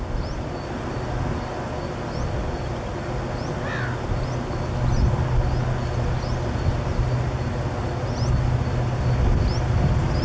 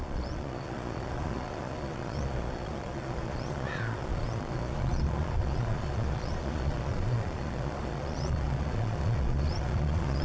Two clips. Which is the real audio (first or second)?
first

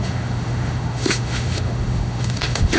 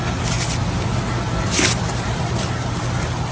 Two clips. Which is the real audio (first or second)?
second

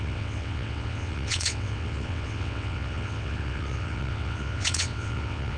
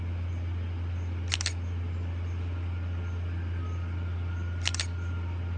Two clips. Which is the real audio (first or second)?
second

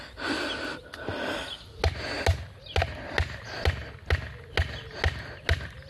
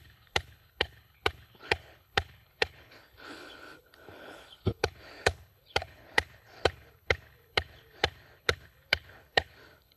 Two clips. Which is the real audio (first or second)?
first